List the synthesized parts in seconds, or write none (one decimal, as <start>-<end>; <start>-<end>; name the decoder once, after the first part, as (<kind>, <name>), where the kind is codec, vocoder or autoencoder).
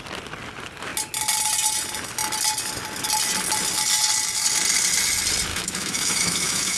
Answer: 5.5-6.8 (autoencoder, DAC-VAE)